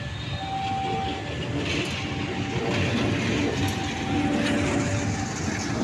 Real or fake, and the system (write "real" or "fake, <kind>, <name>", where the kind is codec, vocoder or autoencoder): real